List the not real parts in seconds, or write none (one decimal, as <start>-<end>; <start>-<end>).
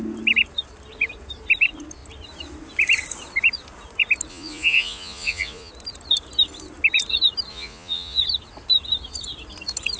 4.3-5.7; 7.5-8.2